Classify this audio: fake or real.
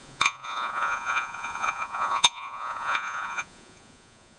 fake